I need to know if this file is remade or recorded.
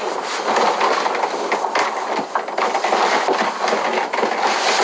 recorded